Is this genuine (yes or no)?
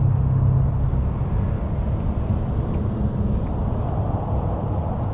yes